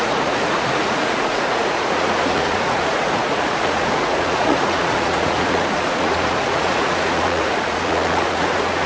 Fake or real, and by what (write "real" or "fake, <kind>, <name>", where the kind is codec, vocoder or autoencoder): fake, vocoder, Vocos